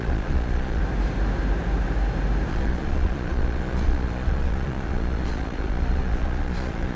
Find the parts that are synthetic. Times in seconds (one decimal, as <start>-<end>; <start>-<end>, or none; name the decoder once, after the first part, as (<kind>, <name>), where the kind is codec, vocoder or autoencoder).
0.0-0.8 (vocoder, Vocos); 2.5-7.0